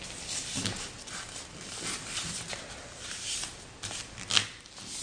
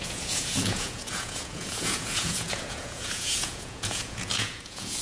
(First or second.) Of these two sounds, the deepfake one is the second